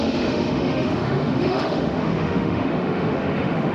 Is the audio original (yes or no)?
no